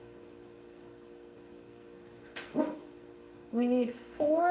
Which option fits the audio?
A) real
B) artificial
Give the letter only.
B